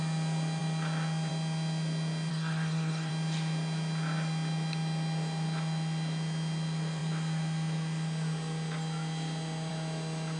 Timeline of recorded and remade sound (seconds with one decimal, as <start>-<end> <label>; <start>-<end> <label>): 0.0-2.3 recorded; 2.3-3.1 remade; 3.1-10.4 recorded